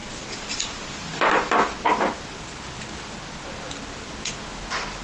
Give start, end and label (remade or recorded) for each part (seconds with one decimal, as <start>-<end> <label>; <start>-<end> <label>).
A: 0.0-5.0 recorded